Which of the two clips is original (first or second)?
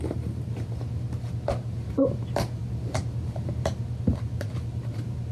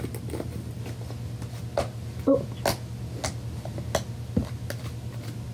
second